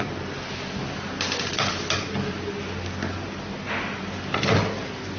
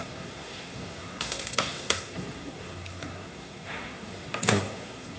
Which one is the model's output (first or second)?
second